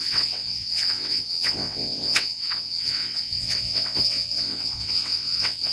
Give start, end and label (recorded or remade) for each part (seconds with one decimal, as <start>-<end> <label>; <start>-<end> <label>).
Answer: 0.0-5.7 remade